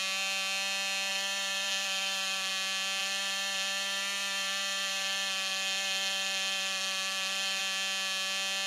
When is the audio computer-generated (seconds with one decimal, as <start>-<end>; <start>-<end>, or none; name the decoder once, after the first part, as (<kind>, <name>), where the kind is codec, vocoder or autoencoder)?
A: 1.1-2.5 (vocoder, BigVGAN v2); 3.0-7.6